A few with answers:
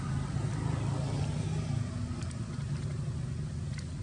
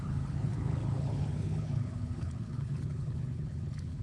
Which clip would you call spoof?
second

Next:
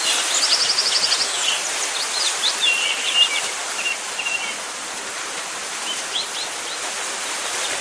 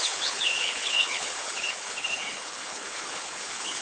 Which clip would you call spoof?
second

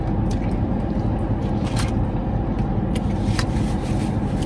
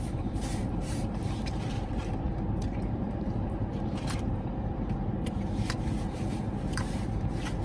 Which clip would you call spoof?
second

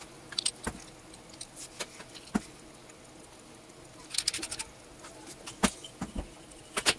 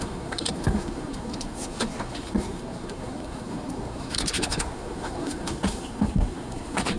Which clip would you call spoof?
second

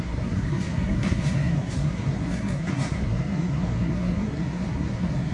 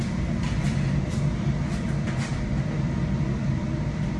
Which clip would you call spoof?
first